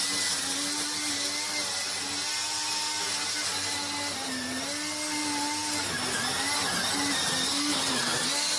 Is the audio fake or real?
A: real